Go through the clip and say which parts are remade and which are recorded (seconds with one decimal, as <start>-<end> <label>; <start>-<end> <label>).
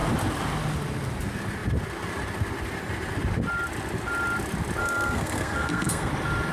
0.0-4.8 recorded; 4.8-6.1 remade; 6.1-6.5 recorded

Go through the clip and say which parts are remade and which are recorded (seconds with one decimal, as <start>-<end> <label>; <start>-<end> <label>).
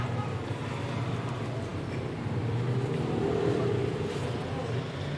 0.0-1.7 recorded; 1.7-4.4 remade; 4.4-5.2 recorded